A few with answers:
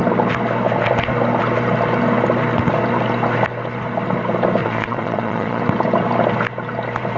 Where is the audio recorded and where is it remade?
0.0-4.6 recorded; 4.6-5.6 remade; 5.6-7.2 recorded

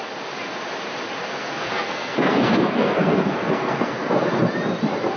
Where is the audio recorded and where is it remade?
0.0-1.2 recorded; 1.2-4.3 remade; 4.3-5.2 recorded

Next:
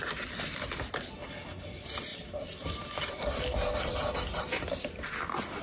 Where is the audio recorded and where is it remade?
0.0-5.6 recorded

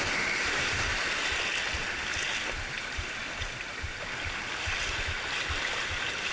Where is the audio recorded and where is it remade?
0.0-0.9 remade; 0.9-2.7 recorded; 2.7-3.2 remade; 3.2-5.8 recorded; 5.8-6.3 remade

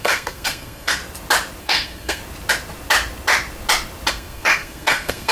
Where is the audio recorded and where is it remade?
0.0-1.0 remade; 1.0-1.6 recorded; 1.6-2.2 remade; 2.2-4.1 recorded; 4.1-5.3 remade